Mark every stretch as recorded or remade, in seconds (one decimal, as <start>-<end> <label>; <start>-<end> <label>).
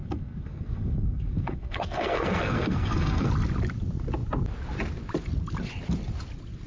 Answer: 0.0-3.3 remade; 3.3-6.7 recorded